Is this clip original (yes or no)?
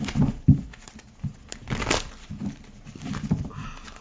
yes